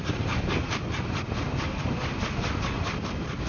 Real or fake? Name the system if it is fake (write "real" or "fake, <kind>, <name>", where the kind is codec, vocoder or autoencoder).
real